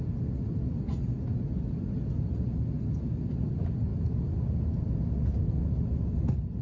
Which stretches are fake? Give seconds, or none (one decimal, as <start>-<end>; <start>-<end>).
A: none